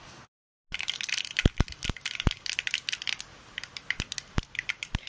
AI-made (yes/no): no